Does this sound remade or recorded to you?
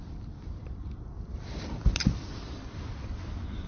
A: recorded